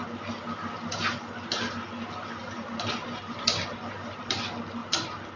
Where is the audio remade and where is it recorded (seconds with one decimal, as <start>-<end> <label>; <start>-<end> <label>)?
0.0-2.4 recorded; 2.4-4.3 remade; 4.3-4.8 recorded; 4.8-5.4 remade